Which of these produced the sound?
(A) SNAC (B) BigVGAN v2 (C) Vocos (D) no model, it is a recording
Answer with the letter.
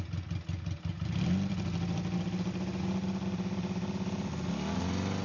D